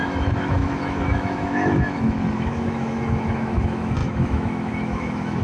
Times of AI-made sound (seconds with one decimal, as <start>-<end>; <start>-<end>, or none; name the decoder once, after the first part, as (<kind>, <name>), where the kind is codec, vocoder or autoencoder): 0.0-5.4 (autoencoder, DAC-VAE)